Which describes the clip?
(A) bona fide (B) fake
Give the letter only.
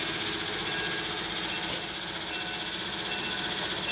A